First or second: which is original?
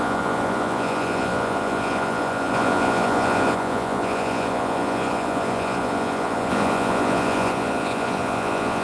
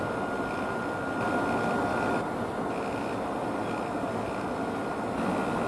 second